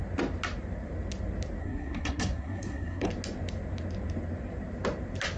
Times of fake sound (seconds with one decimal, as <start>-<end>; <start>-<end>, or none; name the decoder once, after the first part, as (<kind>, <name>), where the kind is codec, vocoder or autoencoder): 1.6-3.1 (codec, SNAC)